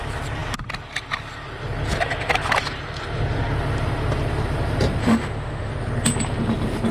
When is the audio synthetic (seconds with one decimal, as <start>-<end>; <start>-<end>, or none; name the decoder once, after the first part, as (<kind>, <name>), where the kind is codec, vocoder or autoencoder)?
5.0-5.7 (autoencoder, DAC-VAE)

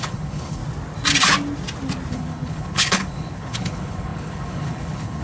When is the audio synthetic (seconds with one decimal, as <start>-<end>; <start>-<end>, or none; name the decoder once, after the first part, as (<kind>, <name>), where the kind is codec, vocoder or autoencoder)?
0.0-0.6 (codec, HILCodec); 2.1-5.2

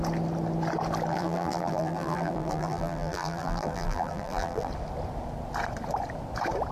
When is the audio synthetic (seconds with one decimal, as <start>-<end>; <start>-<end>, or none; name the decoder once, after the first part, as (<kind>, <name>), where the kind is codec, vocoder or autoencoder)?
1.1-4.7 (vocoder, BigVGAN v2)

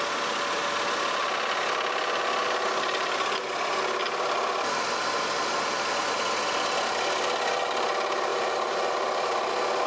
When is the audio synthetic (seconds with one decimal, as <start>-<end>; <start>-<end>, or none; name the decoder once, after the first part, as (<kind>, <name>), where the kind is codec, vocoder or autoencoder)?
8.3-9.5 (vocoder, BigVGAN v2)